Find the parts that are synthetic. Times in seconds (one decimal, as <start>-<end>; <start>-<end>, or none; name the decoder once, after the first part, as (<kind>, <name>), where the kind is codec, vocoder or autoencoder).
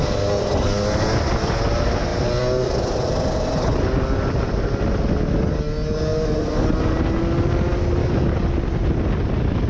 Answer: 8.0-8.5 (codec, DAC)